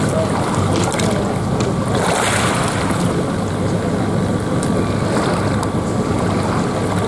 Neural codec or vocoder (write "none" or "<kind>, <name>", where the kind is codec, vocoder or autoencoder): none